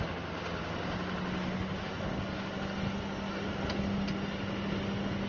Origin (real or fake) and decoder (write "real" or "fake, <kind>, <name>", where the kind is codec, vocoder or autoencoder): real